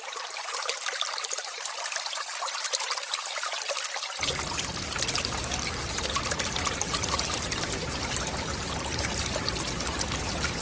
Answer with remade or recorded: recorded